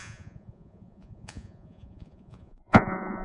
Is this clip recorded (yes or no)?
no